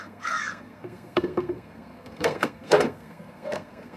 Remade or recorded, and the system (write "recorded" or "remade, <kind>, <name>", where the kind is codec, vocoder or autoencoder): remade, codec, SNAC